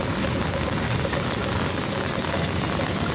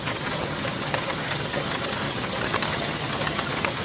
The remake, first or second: second